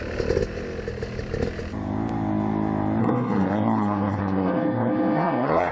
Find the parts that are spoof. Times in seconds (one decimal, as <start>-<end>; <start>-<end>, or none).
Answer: 3.0-5.7